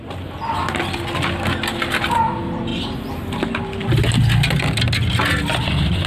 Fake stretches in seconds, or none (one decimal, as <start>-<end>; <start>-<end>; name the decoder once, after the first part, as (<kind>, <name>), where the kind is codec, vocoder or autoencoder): 2.7-4.0 (vocoder, BigVGAN v2)